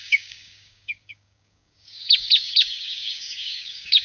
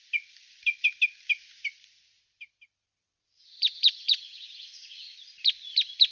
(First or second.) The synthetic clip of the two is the first